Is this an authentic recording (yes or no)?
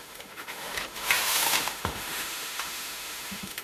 no